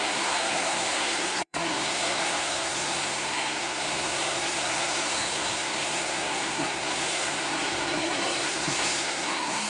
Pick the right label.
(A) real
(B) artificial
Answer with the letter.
B